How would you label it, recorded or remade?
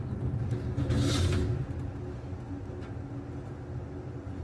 recorded